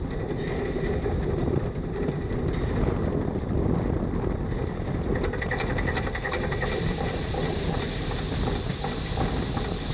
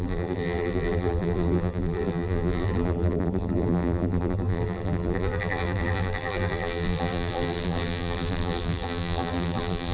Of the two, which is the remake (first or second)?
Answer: second